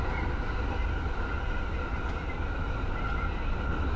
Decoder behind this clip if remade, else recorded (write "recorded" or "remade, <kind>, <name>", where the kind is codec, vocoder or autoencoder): recorded